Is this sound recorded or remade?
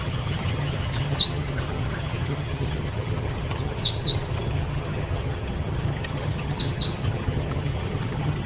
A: remade